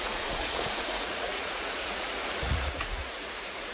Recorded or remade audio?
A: remade